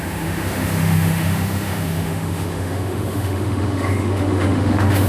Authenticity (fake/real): fake